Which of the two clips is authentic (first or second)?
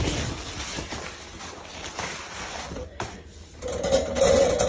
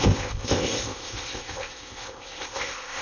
first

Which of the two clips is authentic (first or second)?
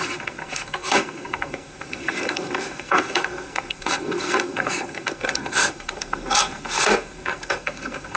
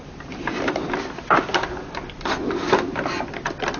second